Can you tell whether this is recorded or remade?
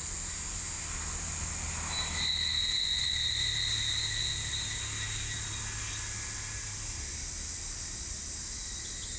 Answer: recorded